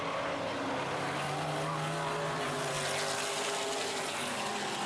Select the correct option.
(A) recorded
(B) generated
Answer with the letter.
A